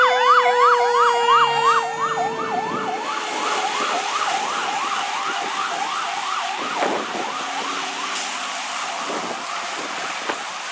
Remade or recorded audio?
recorded